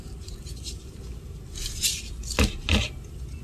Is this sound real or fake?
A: real